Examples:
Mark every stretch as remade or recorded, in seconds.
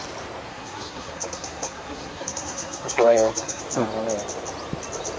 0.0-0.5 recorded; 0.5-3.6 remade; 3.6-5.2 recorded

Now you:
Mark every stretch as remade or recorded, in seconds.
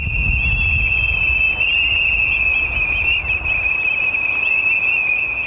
0.0-2.5 recorded; 2.5-4.3 remade; 4.3-5.5 recorded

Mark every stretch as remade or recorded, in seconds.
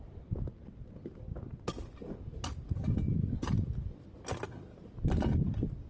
0.0-5.9 recorded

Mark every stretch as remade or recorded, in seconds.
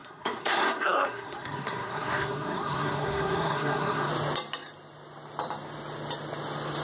0.0-4.1 remade; 4.1-6.8 recorded